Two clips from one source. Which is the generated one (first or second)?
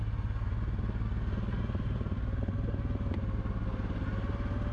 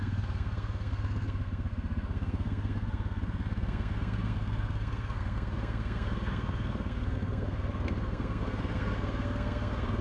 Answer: second